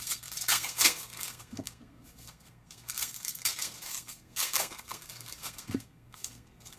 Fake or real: fake